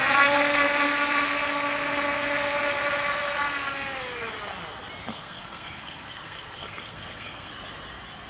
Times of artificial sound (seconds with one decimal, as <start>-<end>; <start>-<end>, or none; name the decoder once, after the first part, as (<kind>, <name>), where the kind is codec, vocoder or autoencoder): 5.0-7.5 (codec, SNAC)